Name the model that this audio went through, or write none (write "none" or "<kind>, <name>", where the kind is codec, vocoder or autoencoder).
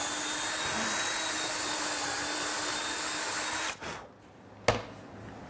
none